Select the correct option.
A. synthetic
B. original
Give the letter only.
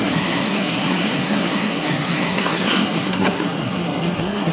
A